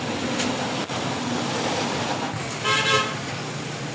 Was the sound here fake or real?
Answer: fake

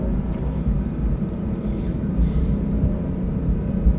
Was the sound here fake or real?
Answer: fake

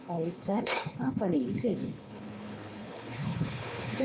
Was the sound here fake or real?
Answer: fake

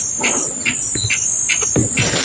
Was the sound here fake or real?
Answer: real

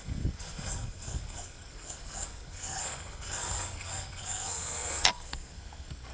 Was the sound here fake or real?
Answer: fake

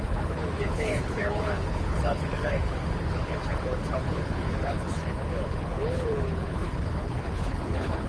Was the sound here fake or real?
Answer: fake